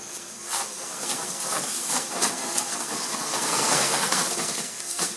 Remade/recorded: remade